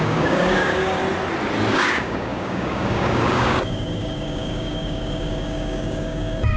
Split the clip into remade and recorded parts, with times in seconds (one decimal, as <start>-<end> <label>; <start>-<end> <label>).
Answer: 0.0-1.0 remade; 1.0-1.7 recorded; 1.7-6.6 remade